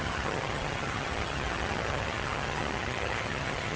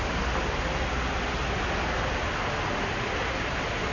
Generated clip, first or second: first